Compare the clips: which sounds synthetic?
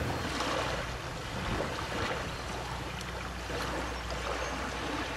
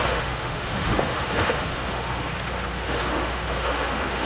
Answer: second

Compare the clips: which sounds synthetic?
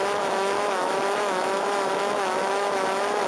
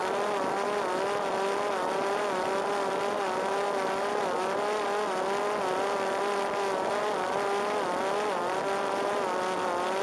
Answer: first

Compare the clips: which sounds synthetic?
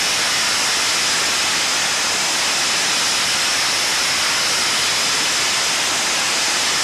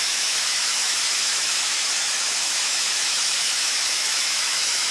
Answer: second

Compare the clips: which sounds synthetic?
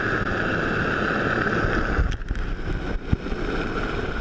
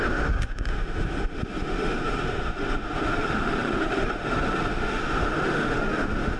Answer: second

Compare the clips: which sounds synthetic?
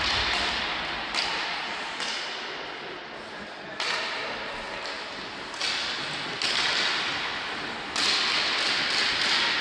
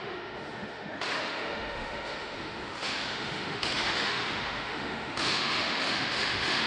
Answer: second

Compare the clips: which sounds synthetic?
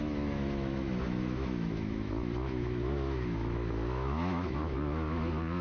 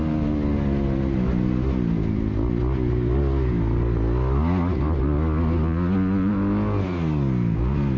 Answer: first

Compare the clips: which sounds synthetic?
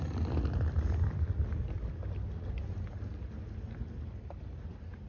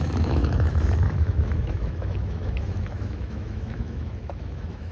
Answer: second